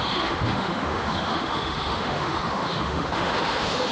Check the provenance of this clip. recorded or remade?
remade